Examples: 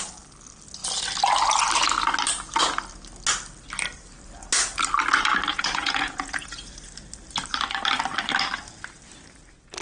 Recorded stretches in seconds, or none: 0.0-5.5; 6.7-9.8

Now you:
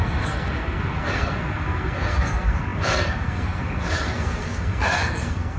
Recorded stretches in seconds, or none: none

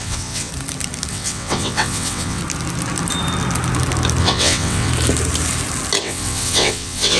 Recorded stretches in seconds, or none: 0.5-1.1; 2.4-4.2; 4.9-6.0

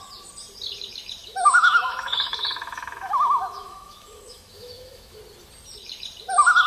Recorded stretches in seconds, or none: 0.0-1.2; 5.2-6.7

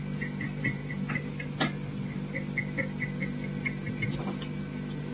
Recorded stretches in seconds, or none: 0.0-5.1

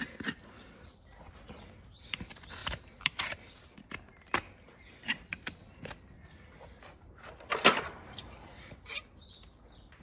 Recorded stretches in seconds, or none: 0.0-10.0